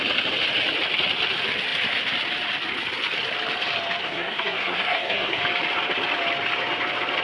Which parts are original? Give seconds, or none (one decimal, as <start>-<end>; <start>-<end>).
0.0-4.0; 5.4-7.2